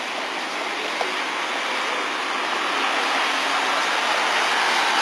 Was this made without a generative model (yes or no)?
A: yes